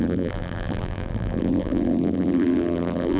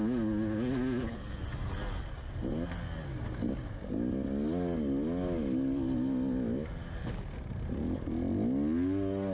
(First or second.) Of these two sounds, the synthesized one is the first